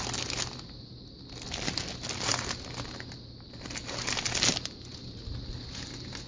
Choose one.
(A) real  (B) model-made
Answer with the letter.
A